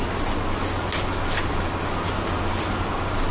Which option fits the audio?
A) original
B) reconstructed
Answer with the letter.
A